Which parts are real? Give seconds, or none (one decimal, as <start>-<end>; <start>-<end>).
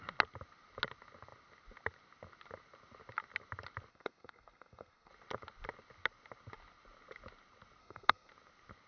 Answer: 0.0-3.9; 5.1-7.8; 8.3-8.9